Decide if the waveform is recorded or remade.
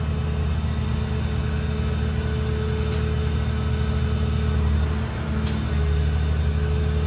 recorded